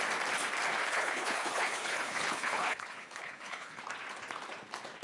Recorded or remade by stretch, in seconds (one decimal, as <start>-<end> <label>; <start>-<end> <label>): 0.0-0.8 recorded; 0.8-3.8 remade; 3.8-5.0 recorded